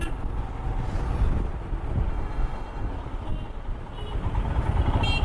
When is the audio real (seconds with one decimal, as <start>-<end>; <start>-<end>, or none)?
0.0-2.1; 2.9-5.2